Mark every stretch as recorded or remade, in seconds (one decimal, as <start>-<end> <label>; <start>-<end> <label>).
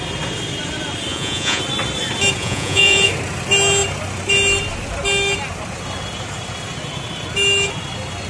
0.0-1.1 recorded; 1.1-1.6 remade; 1.6-2.4 recorded; 2.4-3.1 remade; 3.1-8.3 recorded